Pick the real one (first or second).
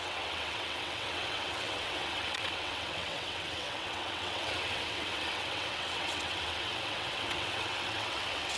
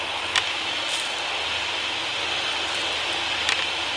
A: second